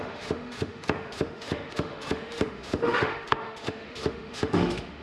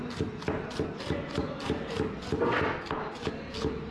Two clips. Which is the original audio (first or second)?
second